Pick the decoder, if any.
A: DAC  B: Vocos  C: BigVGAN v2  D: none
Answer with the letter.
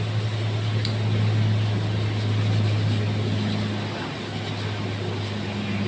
D